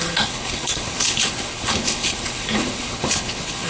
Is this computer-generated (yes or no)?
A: yes